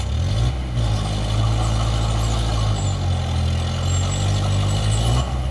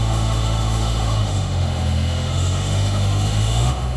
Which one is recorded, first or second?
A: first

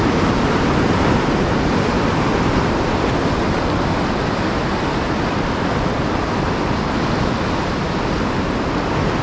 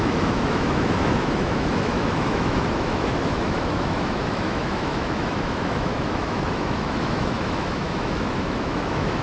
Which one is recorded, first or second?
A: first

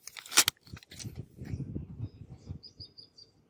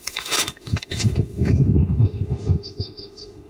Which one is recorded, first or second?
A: first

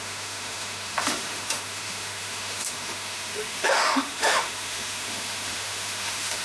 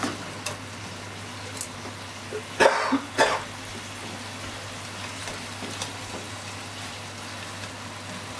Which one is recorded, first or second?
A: second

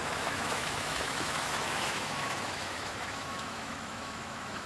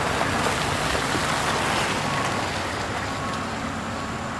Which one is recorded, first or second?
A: second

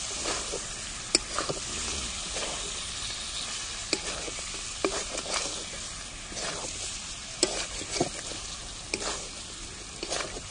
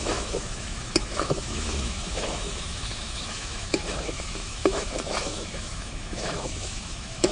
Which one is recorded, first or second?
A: first